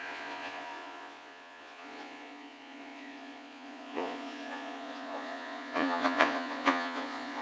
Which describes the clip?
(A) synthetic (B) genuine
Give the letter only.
A